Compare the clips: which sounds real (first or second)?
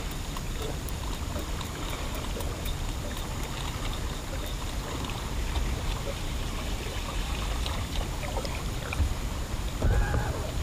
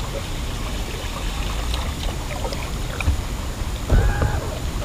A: second